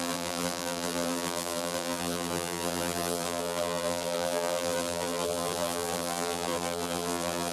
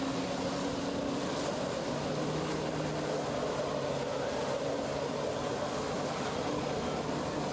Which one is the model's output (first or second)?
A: first